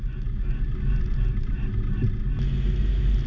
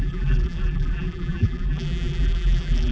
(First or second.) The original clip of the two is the first